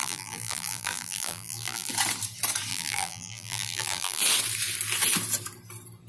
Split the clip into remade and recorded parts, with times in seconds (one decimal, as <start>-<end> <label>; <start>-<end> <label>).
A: 0.0-1.9 remade; 1.9-2.7 recorded; 2.7-4.2 remade; 4.2-6.1 recorded